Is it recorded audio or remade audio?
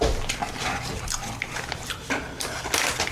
recorded